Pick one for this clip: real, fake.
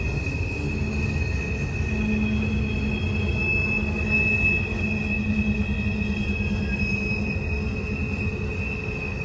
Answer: real